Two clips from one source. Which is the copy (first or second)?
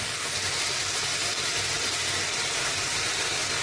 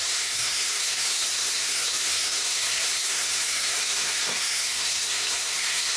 second